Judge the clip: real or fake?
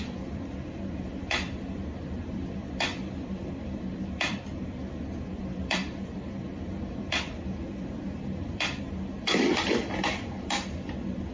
fake